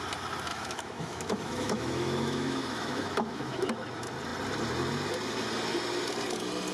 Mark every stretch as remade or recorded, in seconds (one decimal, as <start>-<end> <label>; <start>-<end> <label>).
0.0-0.5 recorded; 0.5-3.7 remade; 3.7-6.7 recorded